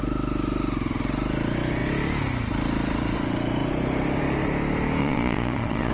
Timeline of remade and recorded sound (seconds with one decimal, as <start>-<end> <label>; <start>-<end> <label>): 0.0-5.0 recorded; 5.0-5.9 remade